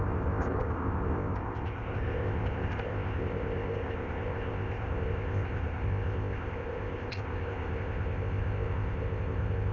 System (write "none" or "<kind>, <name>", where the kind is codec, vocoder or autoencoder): codec, ZipCodec